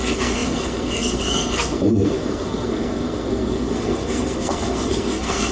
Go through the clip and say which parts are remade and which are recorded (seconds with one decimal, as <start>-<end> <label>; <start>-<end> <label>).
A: 0.0-5.5 remade